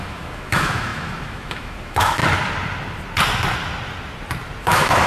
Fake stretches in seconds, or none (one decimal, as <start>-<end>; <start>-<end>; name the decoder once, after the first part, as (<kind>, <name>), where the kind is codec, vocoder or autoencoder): 0.0-2.2 (autoencoder, DAC-VAE); 4.6-5.1